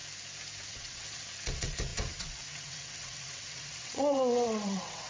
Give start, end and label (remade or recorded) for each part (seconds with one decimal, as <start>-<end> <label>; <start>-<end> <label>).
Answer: 0.0-0.7 recorded; 0.7-5.1 remade